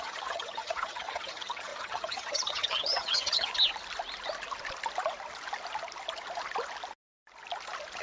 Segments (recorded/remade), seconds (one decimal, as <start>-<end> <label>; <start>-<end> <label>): 0.0-3.5 remade; 3.5-8.0 recorded